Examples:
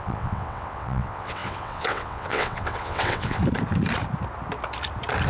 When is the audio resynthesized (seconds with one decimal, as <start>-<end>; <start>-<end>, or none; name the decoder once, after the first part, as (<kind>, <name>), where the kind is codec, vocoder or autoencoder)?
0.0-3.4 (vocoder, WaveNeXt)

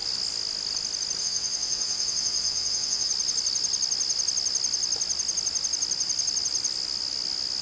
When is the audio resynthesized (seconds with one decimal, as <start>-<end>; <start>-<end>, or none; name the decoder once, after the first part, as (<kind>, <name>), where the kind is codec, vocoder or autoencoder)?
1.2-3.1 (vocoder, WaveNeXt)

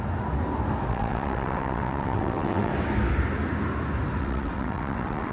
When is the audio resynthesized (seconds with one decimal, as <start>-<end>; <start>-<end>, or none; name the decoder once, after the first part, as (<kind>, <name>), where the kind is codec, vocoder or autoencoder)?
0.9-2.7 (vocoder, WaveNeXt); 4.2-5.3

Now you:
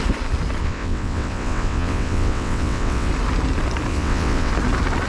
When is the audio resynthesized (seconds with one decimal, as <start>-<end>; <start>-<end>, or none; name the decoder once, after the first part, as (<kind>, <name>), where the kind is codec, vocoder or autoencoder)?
0.6-3.1 (vocoder, WaveNeXt); 3.9-4.5

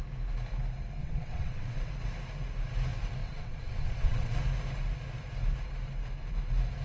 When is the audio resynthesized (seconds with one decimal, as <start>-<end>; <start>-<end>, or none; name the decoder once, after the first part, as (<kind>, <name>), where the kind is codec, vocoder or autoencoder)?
1.0-1.9 (vocoder, WaveNeXt); 3.2-4.4

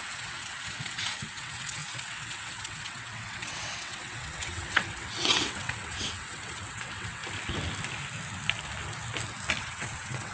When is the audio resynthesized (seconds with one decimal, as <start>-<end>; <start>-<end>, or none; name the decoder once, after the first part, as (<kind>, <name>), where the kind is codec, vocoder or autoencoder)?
0.0-7.2 (vocoder, WaveNeXt); 9.6-10.3